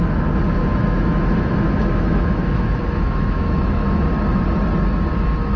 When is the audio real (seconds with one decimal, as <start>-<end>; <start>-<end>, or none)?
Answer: 0.0-0.6; 4.0-5.6